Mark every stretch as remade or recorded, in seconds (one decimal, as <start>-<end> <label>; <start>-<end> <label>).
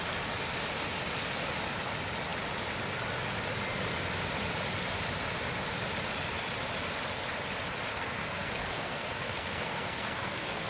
0.0-7.9 recorded; 7.9-10.7 remade